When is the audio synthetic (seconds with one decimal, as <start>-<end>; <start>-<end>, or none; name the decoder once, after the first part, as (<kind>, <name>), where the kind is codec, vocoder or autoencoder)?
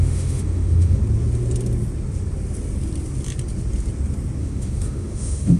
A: 0.0-1.0 (autoencoder, DAC-VAE); 4.4-5.6